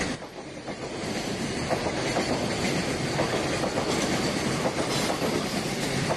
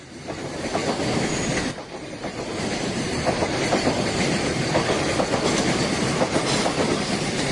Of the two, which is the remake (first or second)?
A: second